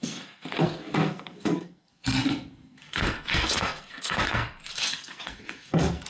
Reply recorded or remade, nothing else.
remade